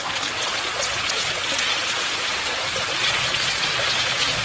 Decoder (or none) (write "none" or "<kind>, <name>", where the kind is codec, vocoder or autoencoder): vocoder, Vocos